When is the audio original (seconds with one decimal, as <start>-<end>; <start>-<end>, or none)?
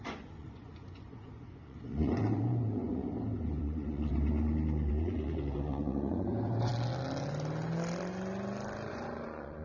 3.1-3.6; 4.1-4.9; 6.7-8.9